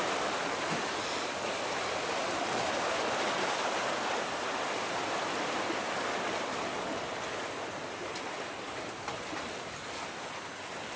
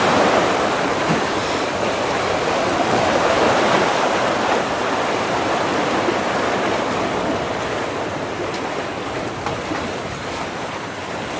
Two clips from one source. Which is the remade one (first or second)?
second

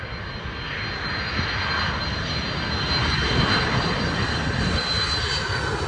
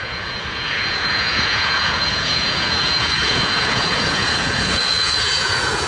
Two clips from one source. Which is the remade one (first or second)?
second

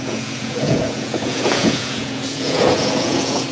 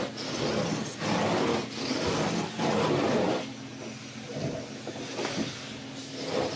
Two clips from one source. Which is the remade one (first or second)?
first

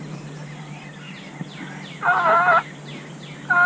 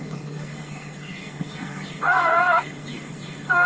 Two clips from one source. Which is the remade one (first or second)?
second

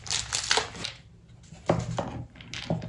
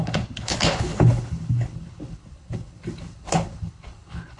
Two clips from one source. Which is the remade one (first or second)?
second